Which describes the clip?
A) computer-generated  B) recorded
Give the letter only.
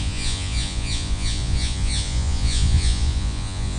A